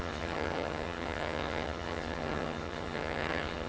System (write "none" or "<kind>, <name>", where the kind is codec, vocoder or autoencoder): vocoder, HiFi-GAN